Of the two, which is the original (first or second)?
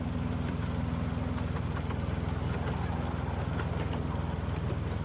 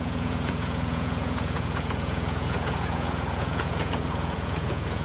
first